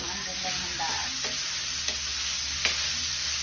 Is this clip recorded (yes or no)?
yes